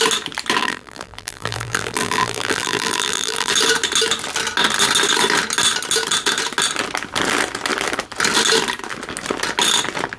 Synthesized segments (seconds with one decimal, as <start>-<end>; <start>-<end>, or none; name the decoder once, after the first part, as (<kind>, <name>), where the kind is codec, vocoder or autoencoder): 0.6-3.5 (vocoder, BigVGAN v2)